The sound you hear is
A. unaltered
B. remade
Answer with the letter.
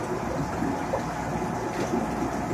A